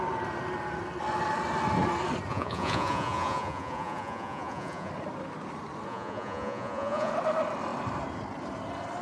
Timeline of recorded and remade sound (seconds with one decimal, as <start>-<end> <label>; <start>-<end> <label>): 0.0-2.3 recorded; 2.3-4.9 remade; 4.9-5.9 recorded; 5.9-7.1 remade; 7.1-9.0 recorded